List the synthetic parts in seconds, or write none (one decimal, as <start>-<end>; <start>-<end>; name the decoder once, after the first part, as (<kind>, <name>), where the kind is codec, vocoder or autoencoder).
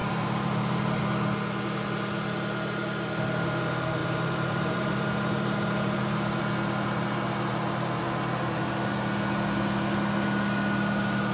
0.0-1.0 (vocoder, BigVGAN v2); 4.0-6.4